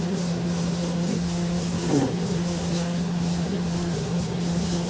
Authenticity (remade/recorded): remade